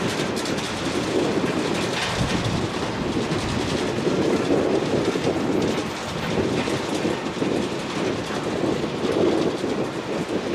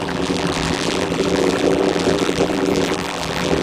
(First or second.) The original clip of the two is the first